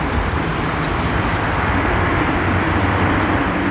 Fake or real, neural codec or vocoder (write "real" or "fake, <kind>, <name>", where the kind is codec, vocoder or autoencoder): fake, vocoder, BigVGAN v2